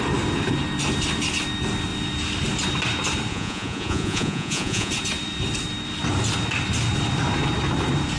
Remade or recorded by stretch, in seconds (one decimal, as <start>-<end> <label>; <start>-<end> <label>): 0.0-3.3 recorded; 3.3-4.9 remade; 4.9-8.2 recorded